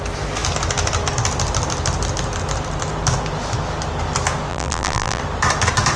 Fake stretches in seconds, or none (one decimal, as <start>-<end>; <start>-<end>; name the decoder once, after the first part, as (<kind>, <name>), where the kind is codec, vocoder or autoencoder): 4.5-5.2 (vocoder, BigVGAN v2)